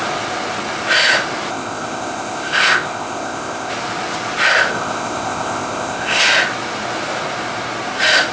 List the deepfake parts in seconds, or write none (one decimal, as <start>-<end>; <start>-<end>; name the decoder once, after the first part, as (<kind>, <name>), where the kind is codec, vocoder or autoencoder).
1.5-3.7 (codec, ZipCodec); 4.7-6.2